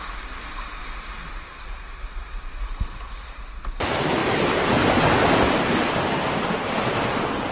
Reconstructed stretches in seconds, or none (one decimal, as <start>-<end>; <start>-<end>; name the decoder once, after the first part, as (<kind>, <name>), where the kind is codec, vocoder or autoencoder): none